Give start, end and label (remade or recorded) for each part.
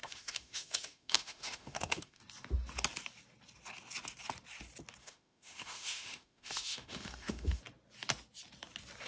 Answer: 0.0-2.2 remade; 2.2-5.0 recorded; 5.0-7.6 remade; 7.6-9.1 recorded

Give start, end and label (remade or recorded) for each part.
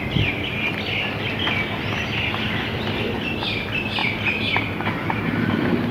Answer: 0.0-5.9 recorded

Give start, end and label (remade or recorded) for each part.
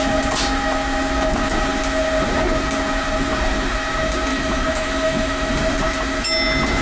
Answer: 0.0-4.3 recorded; 4.3-5.5 remade; 5.5-6.8 recorded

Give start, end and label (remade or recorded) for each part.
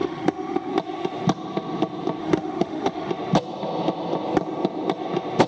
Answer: 0.0-0.7 remade; 0.7-2.2 recorded; 2.2-3.1 remade; 3.1-5.5 recorded